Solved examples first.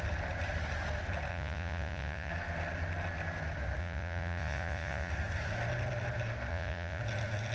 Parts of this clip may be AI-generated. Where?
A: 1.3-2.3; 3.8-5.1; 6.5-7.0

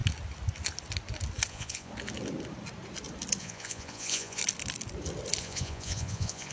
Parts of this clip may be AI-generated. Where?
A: 1.5-1.9; 3.4-4.4; 5.4-6.5

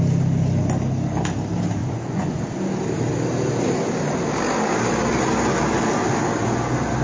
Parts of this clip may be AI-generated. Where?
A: 1.8-2.4

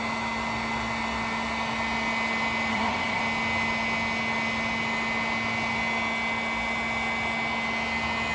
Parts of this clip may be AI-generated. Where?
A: 2.7-3.2

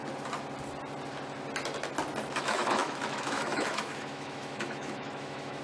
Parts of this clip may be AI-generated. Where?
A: 2.3-5.6

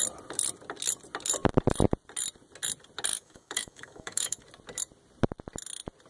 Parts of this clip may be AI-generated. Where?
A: 3.1-4.4

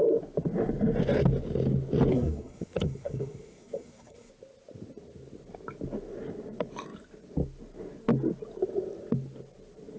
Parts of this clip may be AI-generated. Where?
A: 2.1-4.3